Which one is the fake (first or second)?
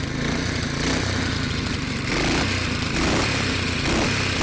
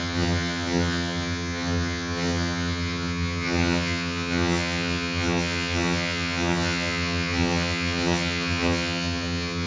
second